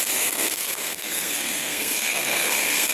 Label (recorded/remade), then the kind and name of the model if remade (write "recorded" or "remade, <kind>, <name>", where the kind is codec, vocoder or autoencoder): remade, codec, SNAC